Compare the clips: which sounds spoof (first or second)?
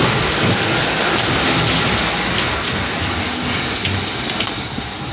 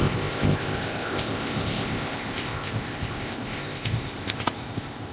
second